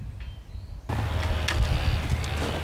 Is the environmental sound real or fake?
real